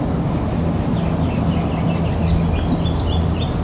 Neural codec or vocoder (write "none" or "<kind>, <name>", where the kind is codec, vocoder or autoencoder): none